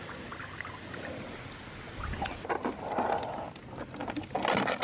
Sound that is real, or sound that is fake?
real